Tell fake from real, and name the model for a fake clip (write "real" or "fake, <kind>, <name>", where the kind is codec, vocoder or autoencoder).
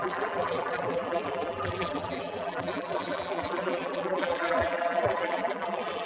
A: fake, vocoder, BigVGAN v2